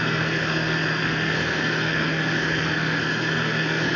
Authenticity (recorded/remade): remade